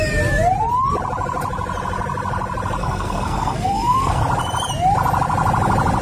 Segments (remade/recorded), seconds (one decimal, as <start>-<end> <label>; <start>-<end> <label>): 0.0-2.8 recorded; 2.8-4.2 remade; 4.2-6.0 recorded